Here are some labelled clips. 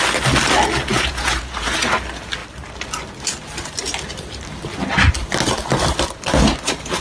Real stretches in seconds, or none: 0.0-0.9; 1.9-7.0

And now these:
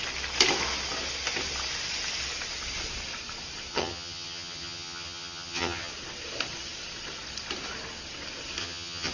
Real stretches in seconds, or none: 0.0-3.7; 5.9-8.6

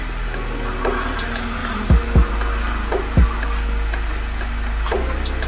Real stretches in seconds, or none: 0.0-5.5

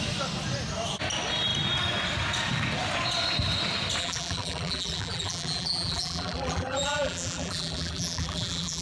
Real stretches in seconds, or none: 0.0-4.0

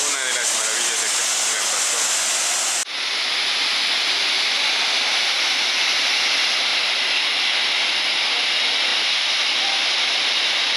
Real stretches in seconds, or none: 0.0-10.8